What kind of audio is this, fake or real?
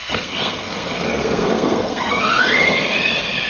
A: fake